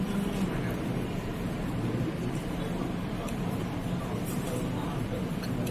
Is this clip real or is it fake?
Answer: real